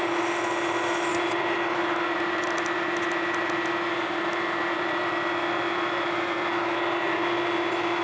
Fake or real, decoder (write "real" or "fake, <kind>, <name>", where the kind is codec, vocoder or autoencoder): real